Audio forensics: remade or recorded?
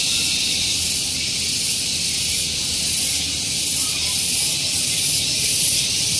recorded